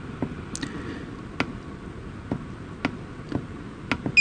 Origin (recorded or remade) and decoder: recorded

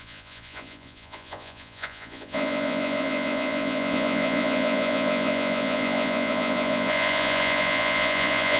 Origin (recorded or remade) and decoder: remade, vocoder, Vocos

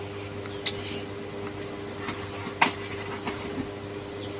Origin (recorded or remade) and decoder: recorded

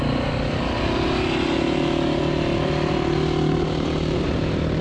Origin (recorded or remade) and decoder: recorded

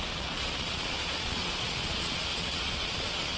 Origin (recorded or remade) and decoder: remade, vocoder, Vocos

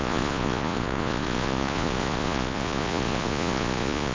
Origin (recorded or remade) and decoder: remade, vocoder, Vocos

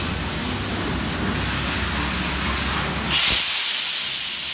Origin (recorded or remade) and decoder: recorded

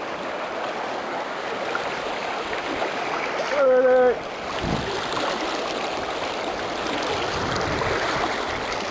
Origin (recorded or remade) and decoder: recorded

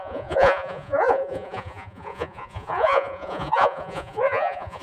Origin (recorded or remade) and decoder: remade, vocoder, Vocos